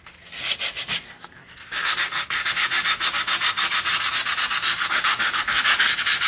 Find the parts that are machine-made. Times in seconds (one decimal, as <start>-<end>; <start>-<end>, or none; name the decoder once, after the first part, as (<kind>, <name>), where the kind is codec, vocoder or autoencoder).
1.4-2.0 (codec, SNAC)